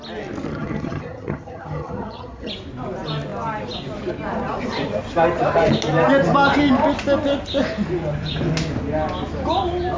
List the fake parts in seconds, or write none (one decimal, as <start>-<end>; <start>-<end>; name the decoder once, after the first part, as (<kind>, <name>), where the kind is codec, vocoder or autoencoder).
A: 0.5-2.5 (vocoder, HiFi-GAN)